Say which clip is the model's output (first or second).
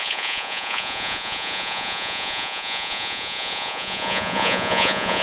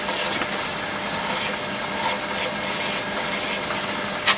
first